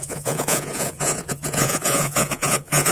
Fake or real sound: fake